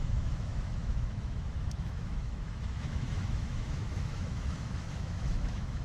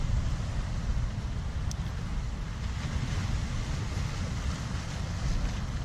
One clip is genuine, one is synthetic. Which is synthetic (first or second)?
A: first